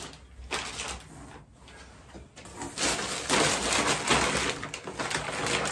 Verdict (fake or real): real